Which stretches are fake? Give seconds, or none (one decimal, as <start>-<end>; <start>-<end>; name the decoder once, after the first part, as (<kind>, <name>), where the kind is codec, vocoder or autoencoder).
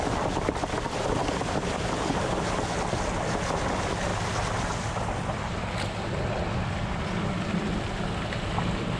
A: none